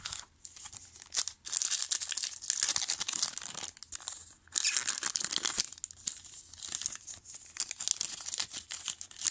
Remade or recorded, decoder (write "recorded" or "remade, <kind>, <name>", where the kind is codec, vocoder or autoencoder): recorded